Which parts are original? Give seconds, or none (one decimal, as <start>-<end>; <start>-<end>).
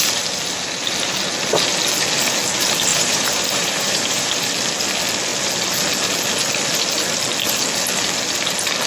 0.0-2.9; 4.5-8.9